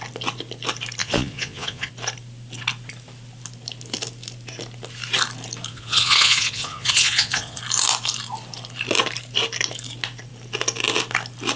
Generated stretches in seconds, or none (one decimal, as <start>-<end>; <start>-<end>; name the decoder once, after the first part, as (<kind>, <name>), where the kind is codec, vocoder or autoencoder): 1.0-1.9 (vocoder, Vocos); 5.7-7.6